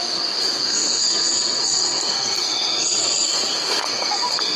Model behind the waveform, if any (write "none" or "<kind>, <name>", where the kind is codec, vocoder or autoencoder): codec, SNAC